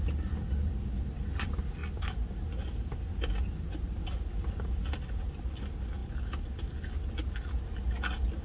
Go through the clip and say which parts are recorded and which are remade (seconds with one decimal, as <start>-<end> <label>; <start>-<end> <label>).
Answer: 0.0-8.4 recorded